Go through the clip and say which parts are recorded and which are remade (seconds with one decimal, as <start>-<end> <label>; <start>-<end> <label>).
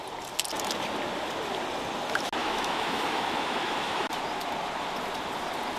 0.0-2.4 recorded; 2.4-4.1 remade; 4.1-5.8 recorded